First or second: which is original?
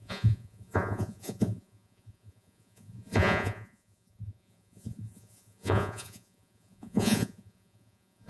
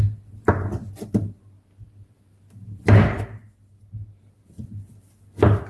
second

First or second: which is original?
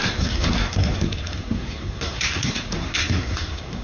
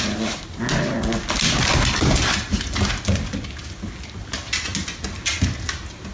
second